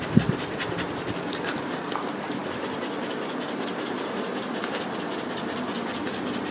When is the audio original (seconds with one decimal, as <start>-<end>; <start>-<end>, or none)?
0.0-6.5